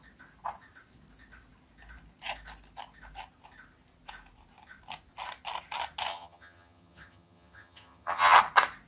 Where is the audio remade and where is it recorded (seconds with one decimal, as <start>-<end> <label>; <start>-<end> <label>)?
0.0-6.1 recorded; 6.1-8.4 remade; 8.4-8.9 recorded